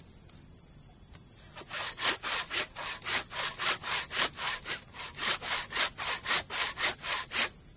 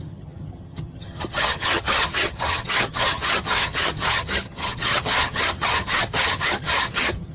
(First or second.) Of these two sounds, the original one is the first